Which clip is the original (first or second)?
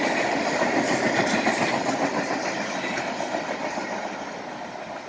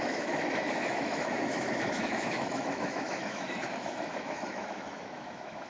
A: first